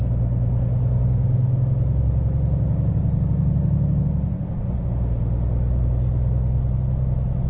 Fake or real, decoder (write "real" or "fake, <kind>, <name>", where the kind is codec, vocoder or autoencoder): real